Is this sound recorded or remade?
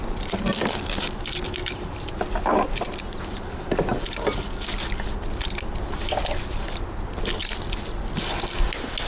recorded